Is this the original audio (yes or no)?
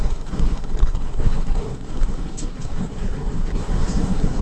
no